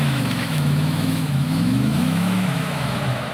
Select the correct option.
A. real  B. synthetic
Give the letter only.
B